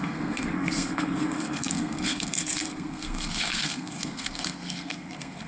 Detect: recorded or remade remade